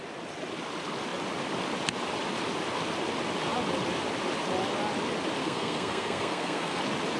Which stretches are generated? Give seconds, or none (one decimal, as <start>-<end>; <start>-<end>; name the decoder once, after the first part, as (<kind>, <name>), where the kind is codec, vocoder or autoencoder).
5.4-6.8 (codec, SNAC)

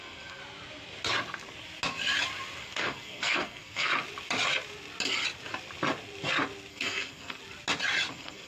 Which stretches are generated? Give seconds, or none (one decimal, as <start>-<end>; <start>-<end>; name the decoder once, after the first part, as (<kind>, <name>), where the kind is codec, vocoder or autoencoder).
0.0-0.4 (codec, SNAC); 2.6-3.9; 6.7-7.4; 8.1-8.5

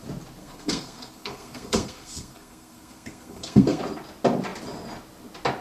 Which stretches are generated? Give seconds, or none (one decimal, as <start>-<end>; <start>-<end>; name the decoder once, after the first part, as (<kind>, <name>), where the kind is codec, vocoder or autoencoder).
0.4-3.8 (codec, SNAC)

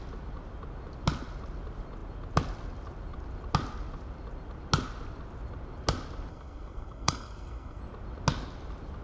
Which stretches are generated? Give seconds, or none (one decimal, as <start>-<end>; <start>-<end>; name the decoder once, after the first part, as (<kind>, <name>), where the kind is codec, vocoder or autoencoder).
6.3-7.8 (codec, SNAC)

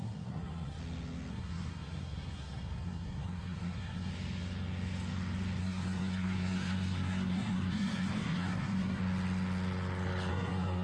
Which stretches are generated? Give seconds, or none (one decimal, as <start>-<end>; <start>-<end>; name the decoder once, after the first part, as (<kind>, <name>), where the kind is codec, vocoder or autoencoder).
0.0-0.8 (codec, SNAC); 1.3-4.1; 5.6-9.0; 10.3-10.8

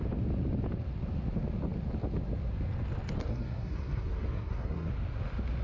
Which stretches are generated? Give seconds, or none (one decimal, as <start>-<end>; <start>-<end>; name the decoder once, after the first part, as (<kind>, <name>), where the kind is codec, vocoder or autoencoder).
3.2-4.9 (codec, SNAC)